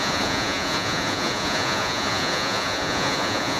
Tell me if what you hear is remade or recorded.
remade